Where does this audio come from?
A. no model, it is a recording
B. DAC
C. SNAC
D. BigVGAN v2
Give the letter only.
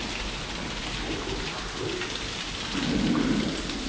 A